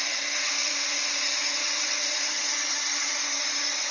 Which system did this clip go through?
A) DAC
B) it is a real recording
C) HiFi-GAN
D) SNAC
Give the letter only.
C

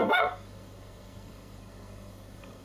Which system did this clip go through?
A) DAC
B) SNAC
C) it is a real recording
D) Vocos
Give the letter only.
B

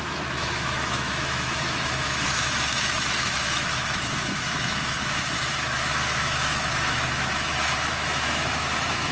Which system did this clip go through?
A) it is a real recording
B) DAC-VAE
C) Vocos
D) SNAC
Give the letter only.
B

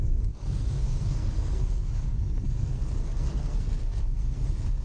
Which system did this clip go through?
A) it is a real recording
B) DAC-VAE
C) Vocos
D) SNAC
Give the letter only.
D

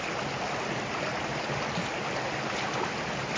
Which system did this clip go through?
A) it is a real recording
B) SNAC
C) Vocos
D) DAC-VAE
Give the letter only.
A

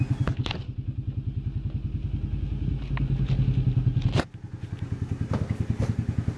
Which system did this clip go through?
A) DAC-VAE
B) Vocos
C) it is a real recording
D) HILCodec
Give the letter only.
C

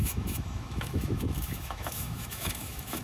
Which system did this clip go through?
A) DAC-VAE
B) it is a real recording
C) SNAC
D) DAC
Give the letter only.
A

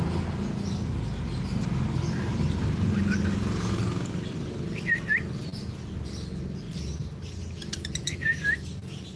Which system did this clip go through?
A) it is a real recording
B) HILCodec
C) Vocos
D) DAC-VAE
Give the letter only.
A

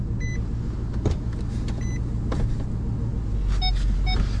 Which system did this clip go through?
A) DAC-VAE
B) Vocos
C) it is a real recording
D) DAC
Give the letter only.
C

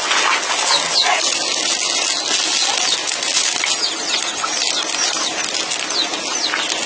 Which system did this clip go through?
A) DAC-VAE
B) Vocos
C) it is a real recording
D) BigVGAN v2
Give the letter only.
C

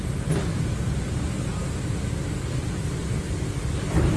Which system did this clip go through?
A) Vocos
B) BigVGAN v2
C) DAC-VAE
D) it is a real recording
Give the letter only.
D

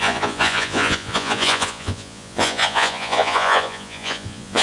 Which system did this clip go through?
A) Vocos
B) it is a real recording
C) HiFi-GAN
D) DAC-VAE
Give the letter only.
A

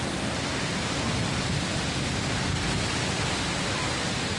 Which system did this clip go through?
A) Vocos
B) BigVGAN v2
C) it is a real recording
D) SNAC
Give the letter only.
C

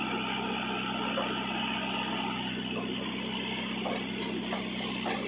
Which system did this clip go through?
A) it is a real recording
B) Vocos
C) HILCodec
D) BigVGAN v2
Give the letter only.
A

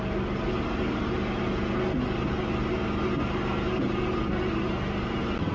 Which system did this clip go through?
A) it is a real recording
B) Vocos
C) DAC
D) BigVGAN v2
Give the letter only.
A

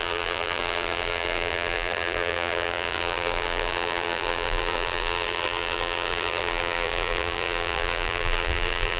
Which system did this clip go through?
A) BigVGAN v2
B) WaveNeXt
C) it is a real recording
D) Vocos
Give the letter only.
A